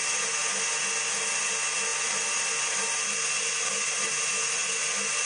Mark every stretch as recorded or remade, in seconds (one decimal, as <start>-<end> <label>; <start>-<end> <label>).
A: 0.0-1.9 recorded; 1.9-3.3 remade; 3.3-5.3 recorded